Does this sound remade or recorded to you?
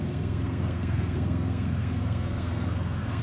remade